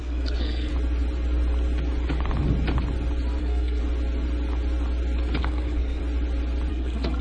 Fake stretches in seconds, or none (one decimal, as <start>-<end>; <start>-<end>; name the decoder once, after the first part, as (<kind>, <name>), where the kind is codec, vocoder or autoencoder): 0.0-0.7 (codec, SNAC); 3.4-3.8; 5.4-6.0; 6.7-7.2